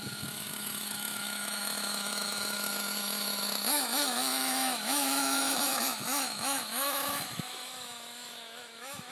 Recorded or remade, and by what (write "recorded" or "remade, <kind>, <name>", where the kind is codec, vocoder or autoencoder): remade, autoencoder, DAC-VAE